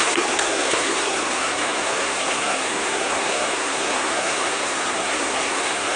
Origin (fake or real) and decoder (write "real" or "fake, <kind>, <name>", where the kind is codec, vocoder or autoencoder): fake, codec, SNAC